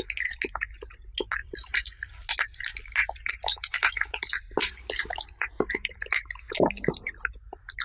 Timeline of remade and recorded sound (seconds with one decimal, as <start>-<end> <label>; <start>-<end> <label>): 0.0-1.4 recorded; 1.4-2.3 remade; 2.3-3.0 recorded; 3.0-6.5 remade; 6.5-7.8 recorded